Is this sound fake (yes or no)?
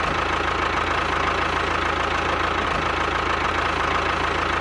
no